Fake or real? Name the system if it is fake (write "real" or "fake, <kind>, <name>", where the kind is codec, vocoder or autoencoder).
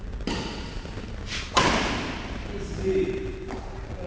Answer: real